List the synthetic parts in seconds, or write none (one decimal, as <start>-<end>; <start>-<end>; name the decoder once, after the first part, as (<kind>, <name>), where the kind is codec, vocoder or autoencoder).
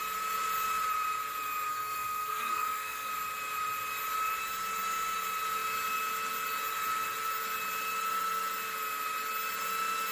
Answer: 1.7-3.1 (codec, SNAC)